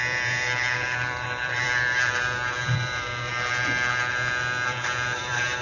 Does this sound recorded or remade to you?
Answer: remade